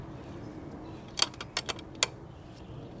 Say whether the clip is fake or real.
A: real